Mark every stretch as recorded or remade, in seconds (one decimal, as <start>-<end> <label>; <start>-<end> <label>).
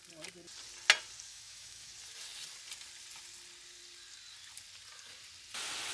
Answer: 0.0-1.3 recorded; 1.3-1.9 remade; 1.9-5.9 recorded